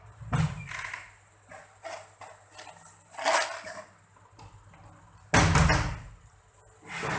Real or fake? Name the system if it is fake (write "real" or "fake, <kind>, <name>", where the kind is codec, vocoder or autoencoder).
real